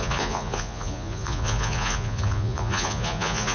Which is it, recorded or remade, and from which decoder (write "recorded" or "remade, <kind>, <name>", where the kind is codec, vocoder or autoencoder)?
remade, vocoder, Vocos